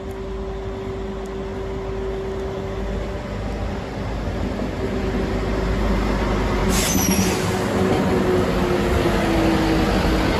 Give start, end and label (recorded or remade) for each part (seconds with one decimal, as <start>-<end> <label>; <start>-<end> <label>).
0.0-10.4 recorded